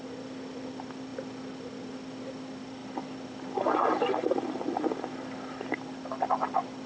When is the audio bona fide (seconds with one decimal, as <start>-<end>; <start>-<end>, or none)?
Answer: 0.0-6.9